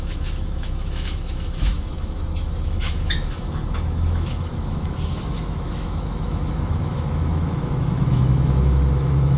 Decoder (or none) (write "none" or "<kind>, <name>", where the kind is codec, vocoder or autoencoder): autoencoder, DAC-VAE